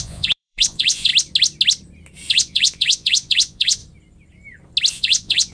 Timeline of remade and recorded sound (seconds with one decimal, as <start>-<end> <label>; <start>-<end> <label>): 0.0-1.1 remade; 1.1-2.3 recorded; 2.3-3.8 remade; 3.8-4.9 recorded; 4.9-5.5 remade